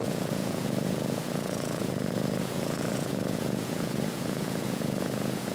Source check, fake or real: fake